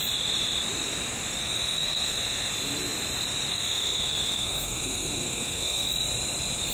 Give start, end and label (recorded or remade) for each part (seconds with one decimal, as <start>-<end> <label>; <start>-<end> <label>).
0.0-1.4 recorded; 1.4-2.5 remade; 2.5-3.5 recorded; 3.5-5.9 remade; 5.9-6.7 recorded